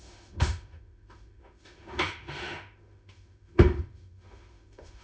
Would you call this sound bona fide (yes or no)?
no